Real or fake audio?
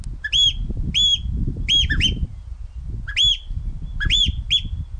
real